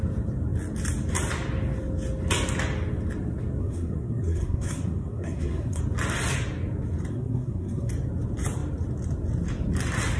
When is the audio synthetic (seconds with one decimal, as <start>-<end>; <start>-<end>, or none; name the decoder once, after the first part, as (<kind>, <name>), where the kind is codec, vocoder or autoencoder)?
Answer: 3.6-5.8 (codec, SNAC); 7.1-7.9